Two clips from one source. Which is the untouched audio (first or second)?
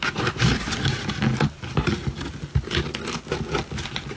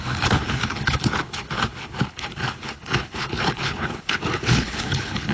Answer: first